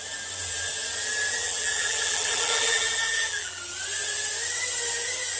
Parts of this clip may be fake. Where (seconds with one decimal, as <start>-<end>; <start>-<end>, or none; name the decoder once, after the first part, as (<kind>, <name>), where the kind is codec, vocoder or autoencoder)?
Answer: 1.3-3.6 (vocoder, BigVGAN v2)